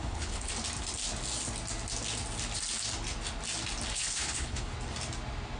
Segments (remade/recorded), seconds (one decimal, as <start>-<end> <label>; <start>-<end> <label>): 0.0-0.5 remade; 0.5-3.9 recorded; 3.9-4.7 remade; 4.7-5.6 recorded